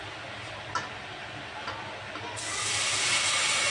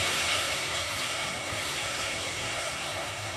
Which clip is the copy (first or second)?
second